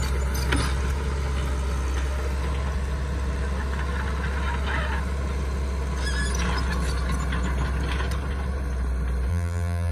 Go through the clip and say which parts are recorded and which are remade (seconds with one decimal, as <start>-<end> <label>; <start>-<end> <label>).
0.0-9.3 recorded; 9.3-9.9 remade